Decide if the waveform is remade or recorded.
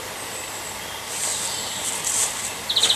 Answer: recorded